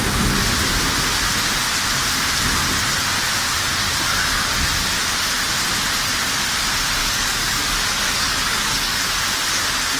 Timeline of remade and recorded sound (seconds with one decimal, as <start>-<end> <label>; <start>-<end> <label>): 0.0-7.0 recorded; 7.0-9.0 remade; 9.0-10.0 recorded